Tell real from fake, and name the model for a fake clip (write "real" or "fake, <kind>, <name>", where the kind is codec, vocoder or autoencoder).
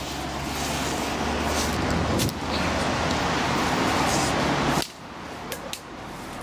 real